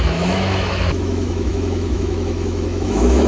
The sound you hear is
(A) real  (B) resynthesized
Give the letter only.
B